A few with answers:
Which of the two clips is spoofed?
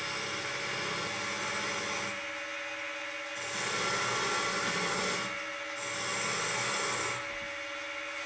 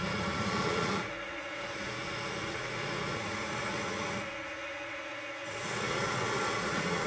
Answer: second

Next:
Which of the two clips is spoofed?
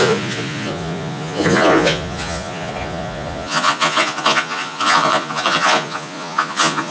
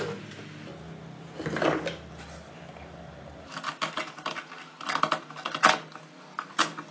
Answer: first